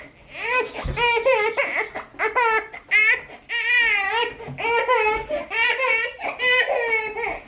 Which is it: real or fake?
real